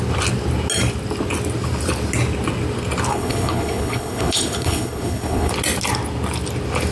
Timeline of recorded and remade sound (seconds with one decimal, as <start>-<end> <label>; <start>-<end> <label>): 0.0-3.1 recorded; 3.1-5.5 remade; 5.5-6.9 recorded